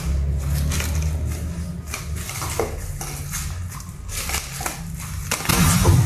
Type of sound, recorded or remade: recorded